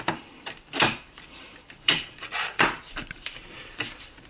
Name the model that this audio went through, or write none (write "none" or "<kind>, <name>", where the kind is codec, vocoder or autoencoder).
vocoder, BigVGAN v2